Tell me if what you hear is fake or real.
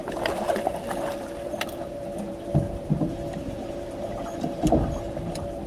fake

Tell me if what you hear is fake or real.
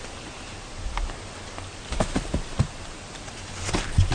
real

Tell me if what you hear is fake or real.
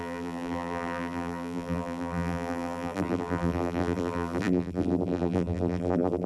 fake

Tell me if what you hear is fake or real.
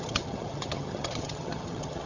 fake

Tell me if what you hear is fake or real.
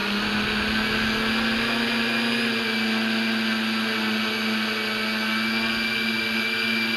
real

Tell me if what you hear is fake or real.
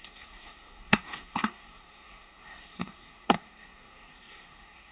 fake